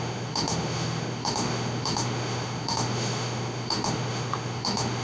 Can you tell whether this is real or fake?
fake